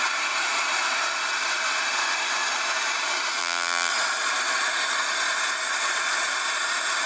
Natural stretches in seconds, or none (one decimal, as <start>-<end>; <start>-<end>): 0.0-3.4; 3.9-7.1

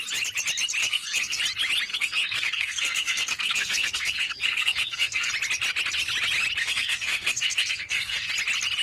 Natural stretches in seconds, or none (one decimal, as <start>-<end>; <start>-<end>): 0.0-0.8; 1.4-1.9; 5.3-6.6; 8.3-8.8

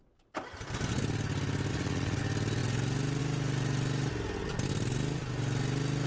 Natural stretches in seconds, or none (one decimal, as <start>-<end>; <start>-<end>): 0.0-1.7; 2.2-6.1

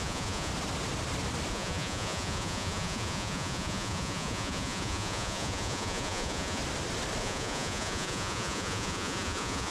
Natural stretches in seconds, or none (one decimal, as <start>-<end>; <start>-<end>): 0.5-1.5; 6.6-7.2